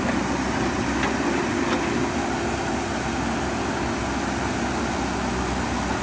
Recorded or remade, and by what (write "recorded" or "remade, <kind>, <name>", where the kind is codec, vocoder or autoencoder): recorded